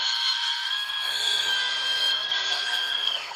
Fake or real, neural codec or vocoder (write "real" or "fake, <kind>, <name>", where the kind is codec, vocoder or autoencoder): fake, codec, SNAC